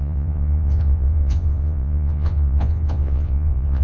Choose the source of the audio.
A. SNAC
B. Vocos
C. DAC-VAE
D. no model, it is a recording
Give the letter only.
B